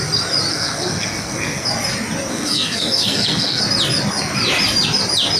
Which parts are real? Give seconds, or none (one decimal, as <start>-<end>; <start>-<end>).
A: 0.0-0.5; 1.7-2.3; 3.6-5.4